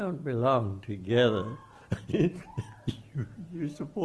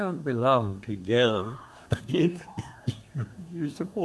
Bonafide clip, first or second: first